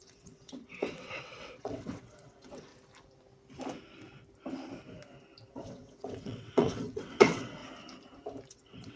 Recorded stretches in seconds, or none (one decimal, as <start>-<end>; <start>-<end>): 2.7-5.5; 7.6-8.5